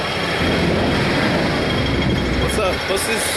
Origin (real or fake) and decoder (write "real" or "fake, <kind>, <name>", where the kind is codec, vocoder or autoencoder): real